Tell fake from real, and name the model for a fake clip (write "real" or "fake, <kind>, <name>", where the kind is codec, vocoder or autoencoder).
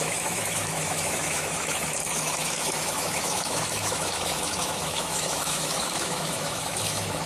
fake, autoencoder, DAC-VAE